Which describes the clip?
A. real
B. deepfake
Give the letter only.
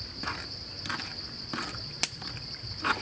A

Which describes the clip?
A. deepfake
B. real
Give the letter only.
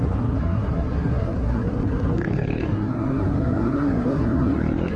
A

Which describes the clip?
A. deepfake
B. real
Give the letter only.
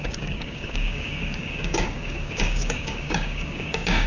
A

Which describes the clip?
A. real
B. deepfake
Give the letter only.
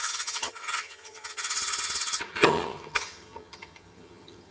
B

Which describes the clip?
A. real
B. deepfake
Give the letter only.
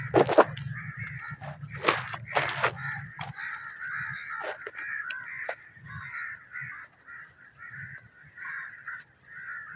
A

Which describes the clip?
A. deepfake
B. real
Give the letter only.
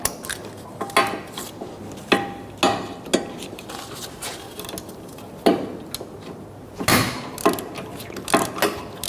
B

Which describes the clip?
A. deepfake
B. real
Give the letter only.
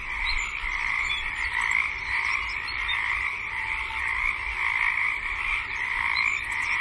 B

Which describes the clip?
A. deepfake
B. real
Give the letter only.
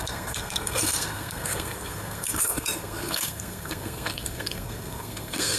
A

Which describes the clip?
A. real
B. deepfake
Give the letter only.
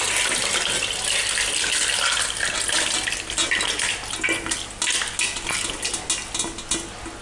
A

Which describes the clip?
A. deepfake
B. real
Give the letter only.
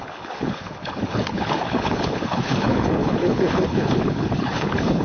A